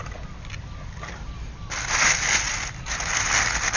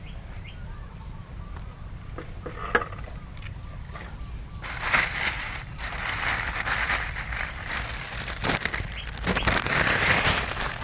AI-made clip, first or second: second